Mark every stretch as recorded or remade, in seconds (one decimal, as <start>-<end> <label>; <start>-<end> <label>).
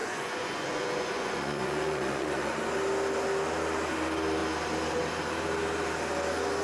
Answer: 0.0-2.6 remade; 2.6-6.6 recorded